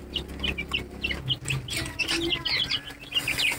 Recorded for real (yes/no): yes